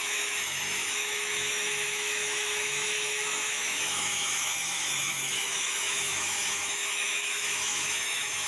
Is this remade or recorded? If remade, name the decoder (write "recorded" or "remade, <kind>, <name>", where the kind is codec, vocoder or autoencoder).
remade, autoencoder, DAC-VAE